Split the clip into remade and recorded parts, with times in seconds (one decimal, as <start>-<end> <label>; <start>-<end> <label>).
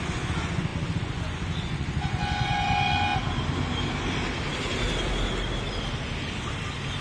0.0-3.1 remade; 3.1-7.0 recorded